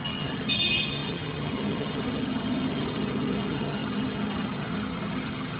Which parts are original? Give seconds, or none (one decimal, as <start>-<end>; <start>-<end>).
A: none